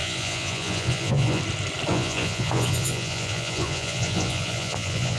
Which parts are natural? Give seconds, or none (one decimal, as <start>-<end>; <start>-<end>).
1.4-1.9